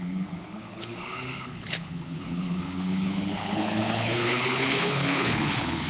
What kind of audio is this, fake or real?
fake